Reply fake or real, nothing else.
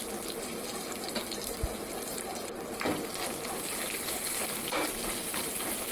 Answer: real